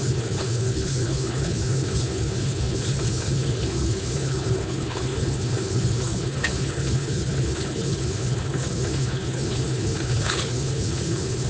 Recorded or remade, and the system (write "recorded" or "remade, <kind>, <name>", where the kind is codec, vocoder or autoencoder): remade, codec, HILCodec